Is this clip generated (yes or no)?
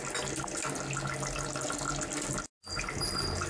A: no